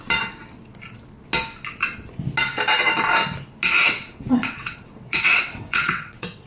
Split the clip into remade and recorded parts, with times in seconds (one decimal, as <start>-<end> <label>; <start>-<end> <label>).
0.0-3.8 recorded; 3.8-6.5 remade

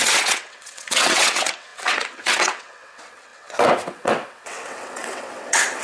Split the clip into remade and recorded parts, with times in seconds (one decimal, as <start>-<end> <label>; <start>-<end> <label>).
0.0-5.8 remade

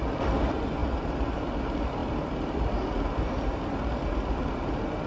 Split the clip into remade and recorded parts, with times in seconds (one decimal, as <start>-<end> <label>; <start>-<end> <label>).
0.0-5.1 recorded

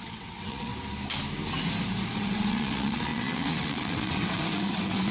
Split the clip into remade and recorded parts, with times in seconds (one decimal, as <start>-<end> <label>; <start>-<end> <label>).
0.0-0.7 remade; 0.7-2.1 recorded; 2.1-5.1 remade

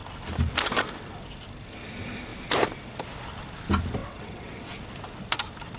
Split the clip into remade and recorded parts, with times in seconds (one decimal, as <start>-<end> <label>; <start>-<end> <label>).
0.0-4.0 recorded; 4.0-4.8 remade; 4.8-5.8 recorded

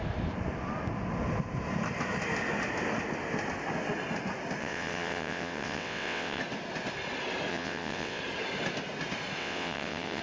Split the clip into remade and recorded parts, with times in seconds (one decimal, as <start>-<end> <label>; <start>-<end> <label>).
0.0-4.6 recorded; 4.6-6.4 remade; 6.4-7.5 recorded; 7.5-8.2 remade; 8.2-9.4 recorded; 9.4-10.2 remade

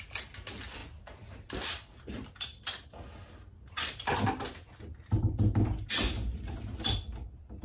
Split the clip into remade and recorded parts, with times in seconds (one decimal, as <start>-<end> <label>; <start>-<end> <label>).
0.0-7.6 recorded

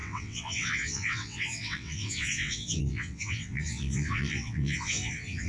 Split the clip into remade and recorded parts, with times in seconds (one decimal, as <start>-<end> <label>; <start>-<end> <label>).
0.0-5.5 remade